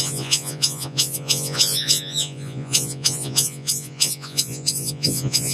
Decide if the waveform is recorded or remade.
remade